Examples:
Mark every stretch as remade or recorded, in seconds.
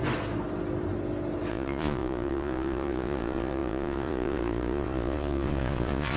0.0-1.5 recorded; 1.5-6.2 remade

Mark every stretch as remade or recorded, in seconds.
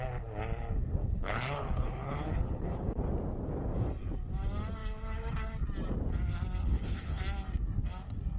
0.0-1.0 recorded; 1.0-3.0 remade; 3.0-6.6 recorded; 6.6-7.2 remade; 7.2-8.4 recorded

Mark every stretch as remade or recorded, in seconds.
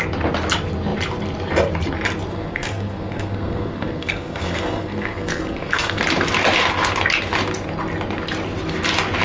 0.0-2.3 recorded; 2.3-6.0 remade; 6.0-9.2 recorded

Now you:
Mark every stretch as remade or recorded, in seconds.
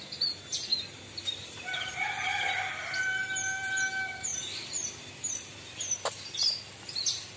0.0-0.7 recorded; 0.7-3.7 remade; 3.7-4.3 recorded; 4.3-6.6 remade; 6.6-7.4 recorded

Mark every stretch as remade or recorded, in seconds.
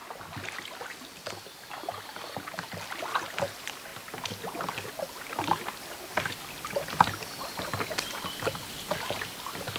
0.0-9.8 recorded